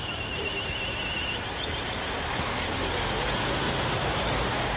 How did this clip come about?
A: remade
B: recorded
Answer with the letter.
B